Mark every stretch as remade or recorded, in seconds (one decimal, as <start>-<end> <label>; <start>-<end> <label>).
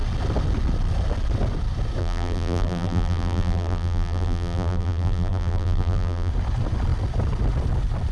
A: 0.0-2.0 recorded; 2.0-6.3 remade; 6.3-8.1 recorded